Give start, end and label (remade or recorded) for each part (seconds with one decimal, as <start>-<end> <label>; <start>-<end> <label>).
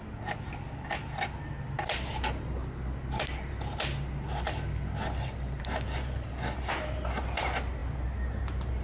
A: 0.0-8.8 recorded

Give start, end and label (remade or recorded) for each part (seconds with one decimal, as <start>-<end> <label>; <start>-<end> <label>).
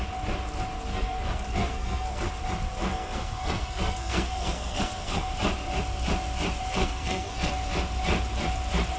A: 0.0-0.9 recorded; 0.9-2.3 remade; 2.3-2.9 recorded; 2.9-5.3 remade; 5.3-6.7 recorded; 6.7-7.5 remade; 7.5-9.0 recorded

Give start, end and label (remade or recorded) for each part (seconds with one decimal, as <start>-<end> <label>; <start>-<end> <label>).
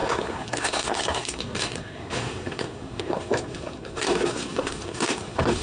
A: 0.0-5.6 remade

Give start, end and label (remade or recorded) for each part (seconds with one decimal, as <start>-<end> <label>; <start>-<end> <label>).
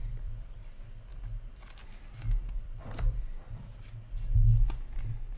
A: 0.0-0.6 remade; 0.6-1.1 recorded; 1.1-3.2 remade; 3.2-5.4 recorded